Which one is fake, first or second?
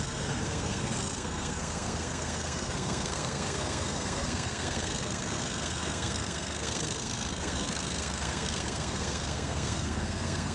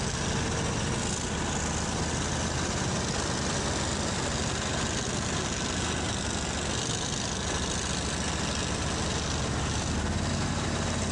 first